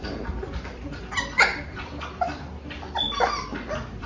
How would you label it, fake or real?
fake